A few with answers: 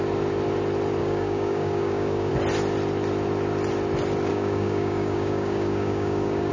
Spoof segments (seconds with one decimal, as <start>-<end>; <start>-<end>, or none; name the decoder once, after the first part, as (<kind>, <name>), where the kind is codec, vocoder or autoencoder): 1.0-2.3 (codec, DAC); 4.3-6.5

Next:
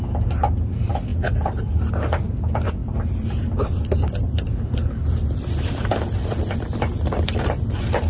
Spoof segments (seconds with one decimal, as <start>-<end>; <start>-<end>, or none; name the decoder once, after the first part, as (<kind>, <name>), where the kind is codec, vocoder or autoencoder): 2.8-5.7 (vocoder, BigVGAN v2)

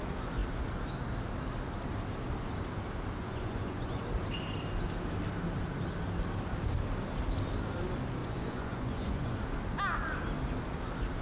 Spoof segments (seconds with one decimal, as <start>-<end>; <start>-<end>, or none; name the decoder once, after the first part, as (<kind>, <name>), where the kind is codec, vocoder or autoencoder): 3.2-4.0 (vocoder, Vocos); 8.2-9.4

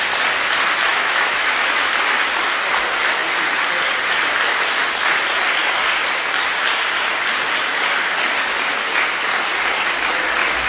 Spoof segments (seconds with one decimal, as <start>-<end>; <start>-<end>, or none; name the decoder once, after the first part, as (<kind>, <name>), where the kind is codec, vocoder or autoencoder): 0.9-1.9 (autoencoder, DAC-VAE)

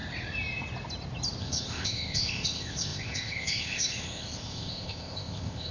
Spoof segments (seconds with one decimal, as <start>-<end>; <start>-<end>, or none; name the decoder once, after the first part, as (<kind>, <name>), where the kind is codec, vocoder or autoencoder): 1.4-5.7 (codec, ZipCodec)

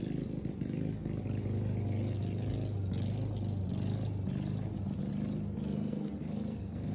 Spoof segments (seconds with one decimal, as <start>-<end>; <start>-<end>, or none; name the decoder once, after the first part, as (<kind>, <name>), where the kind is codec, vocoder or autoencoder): 5.6-6.9 (codec, SNAC)